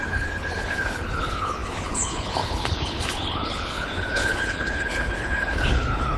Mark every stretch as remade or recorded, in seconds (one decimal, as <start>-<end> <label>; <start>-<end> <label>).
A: 0.0-6.2 remade